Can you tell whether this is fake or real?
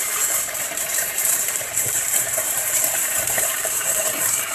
fake